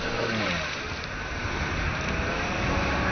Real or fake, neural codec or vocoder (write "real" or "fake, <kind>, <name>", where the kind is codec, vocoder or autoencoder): fake, vocoder, BigVGAN v2